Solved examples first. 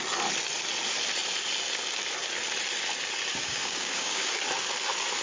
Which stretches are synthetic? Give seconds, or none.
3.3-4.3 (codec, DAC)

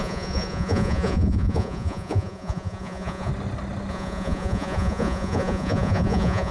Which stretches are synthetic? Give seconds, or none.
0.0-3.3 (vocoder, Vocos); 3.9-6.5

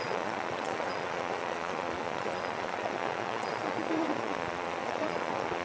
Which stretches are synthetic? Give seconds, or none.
0.0-5.6 (vocoder, Vocos)

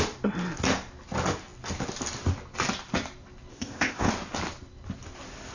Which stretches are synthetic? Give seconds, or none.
3.5-4.1 (codec, ZipCodec)

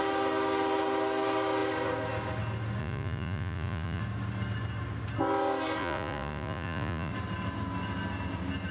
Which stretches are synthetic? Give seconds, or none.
2.8-4.0 (vocoder, Vocos); 5.8-7.1